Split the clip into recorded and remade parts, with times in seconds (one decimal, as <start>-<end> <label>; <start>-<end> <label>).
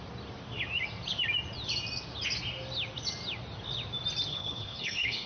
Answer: 0.0-4.3 recorded; 4.3-5.3 remade